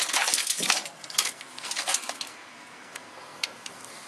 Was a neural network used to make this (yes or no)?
yes